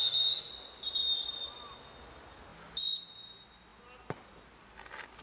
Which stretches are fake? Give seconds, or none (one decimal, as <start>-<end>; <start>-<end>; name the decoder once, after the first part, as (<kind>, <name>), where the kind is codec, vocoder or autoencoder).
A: 0.0-0.5 (autoencoder, DAC-VAE)